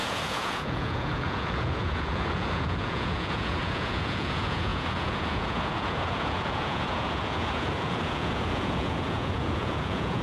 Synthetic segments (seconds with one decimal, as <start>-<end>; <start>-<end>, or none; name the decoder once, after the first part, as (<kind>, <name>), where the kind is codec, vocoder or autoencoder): 0.0-10.2 (vocoder, Vocos)